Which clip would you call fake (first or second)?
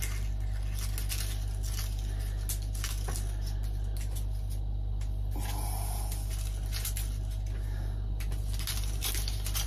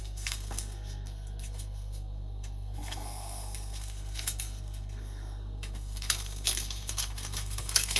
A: second